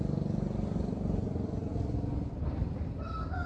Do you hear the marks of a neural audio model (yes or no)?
no